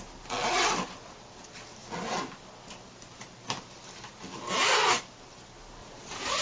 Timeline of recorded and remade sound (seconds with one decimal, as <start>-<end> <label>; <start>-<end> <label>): 0.0-5.8 recorded; 5.8-6.4 remade